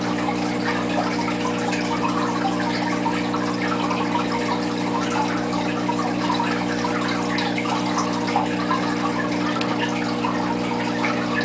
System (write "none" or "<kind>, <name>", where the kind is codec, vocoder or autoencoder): none